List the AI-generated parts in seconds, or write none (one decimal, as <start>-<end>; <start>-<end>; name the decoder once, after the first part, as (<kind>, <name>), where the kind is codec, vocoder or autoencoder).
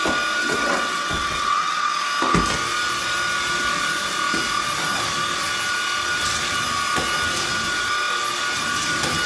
0.4-1.9 (vocoder, WaveNeXt)